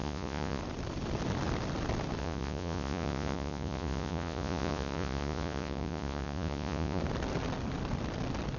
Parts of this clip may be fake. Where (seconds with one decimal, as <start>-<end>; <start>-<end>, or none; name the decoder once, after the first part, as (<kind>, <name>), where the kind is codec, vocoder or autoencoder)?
0.0-0.6 (vocoder, Vocos); 2.2-7.0